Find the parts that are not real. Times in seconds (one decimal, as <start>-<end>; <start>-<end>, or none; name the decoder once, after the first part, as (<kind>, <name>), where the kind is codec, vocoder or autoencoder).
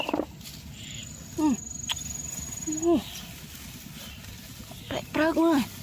none